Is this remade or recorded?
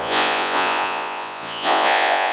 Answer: remade